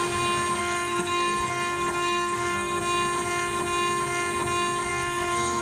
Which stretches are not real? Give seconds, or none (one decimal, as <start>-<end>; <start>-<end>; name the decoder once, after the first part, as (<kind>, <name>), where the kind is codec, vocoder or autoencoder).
0.6-2.8 (codec, SNAC); 4.9-5.6

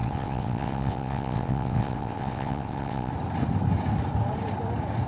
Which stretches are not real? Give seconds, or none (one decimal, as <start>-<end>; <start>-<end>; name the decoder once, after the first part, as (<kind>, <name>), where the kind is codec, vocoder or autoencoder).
0.0-3.1 (vocoder, WaveNeXt)

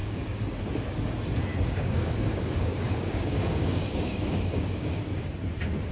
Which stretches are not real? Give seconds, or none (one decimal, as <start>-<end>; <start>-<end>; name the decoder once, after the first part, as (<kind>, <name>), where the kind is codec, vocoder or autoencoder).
0.0-0.6 (codec, DAC); 1.5-5.0

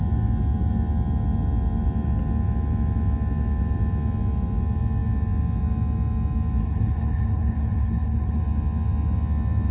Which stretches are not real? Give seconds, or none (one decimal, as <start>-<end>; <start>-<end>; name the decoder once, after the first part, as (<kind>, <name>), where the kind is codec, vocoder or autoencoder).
6.6-8.4 (codec, HILCodec)

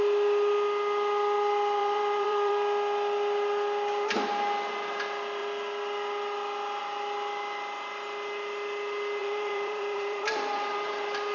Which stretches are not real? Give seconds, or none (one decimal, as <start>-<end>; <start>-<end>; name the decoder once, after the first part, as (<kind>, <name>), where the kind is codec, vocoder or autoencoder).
1.8-2.5 (vocoder, BigVGAN v2); 9.2-10.9